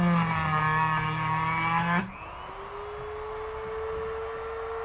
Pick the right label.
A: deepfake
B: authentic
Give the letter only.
B